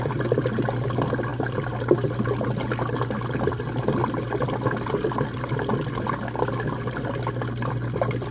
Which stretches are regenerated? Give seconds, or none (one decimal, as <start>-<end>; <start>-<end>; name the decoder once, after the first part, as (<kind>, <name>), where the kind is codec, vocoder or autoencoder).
0.0-8.3 (vocoder, BigVGAN v2)